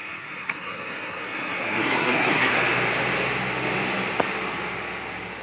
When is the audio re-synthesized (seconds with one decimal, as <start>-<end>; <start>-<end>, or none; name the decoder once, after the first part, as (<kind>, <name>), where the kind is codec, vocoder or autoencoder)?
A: 0.0-2.6 (codec, SNAC)